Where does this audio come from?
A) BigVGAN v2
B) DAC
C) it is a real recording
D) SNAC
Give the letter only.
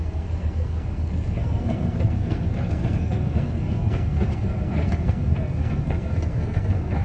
D